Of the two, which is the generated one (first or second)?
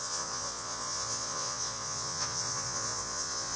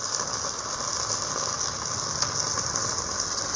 first